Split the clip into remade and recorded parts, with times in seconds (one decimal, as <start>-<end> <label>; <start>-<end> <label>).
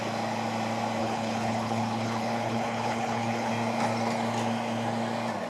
0.0-1.0 recorded; 1.0-3.5 remade; 3.5-5.5 recorded